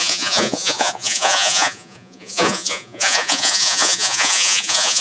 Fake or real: fake